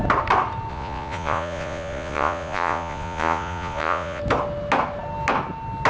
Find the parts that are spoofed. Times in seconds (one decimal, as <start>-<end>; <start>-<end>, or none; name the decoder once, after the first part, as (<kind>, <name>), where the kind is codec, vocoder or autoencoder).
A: 0.7-4.2 (vocoder, Vocos)